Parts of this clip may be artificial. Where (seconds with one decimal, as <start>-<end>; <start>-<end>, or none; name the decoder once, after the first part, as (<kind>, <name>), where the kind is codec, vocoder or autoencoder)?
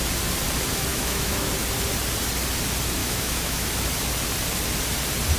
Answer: 0.9-1.5 (autoencoder, DAC-VAE); 3.0-3.7